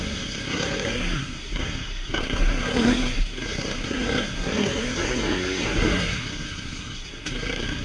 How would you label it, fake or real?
fake